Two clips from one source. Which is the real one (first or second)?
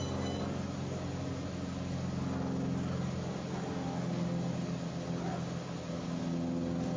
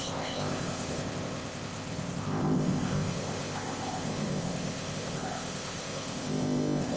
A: first